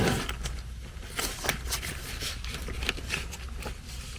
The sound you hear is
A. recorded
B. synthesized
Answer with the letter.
A